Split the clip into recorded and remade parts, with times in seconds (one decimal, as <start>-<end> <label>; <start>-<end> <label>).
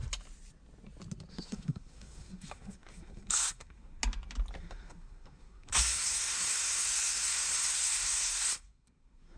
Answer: 0.0-1.3 recorded; 1.3-4.0 remade; 4.0-4.6 recorded; 4.6-9.4 remade